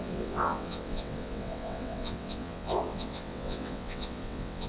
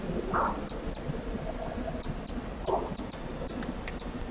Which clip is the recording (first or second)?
second